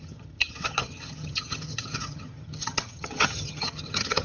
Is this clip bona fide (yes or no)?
no